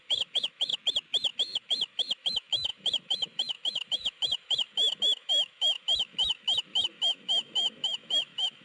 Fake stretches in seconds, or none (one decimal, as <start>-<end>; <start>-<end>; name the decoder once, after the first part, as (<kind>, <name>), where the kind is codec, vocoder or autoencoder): 0.0-0.8 (autoencoder, DAC-VAE); 1.3-8.6

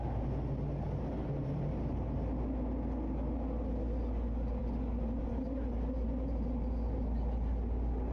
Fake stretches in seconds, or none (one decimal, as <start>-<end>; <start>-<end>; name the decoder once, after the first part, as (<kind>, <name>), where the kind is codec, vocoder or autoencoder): none

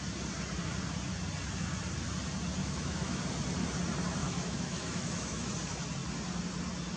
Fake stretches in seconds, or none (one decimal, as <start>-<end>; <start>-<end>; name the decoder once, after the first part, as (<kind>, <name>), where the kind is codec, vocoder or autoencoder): 2.6-3.2 (autoencoder, DAC-VAE); 4.2-5.5

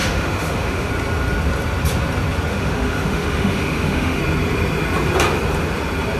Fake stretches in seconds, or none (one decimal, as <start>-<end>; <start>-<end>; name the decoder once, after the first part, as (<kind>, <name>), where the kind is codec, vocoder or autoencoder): 0.0-0.9 (autoencoder, DAC-VAE); 2.5-4.2

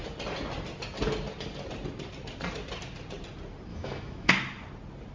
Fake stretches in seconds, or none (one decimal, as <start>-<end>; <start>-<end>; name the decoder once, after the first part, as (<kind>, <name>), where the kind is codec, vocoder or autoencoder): 3.7-4.3 (autoencoder, DAC-VAE)